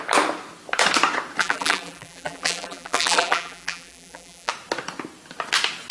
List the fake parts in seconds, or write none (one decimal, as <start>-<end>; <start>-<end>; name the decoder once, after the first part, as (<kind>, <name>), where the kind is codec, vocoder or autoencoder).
1.4-4.5 (vocoder, BigVGAN v2)